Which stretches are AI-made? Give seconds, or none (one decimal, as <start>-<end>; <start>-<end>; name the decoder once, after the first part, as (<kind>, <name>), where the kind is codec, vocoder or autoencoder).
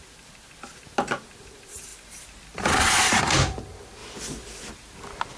none